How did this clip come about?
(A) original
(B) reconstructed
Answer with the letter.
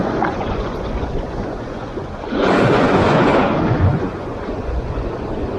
B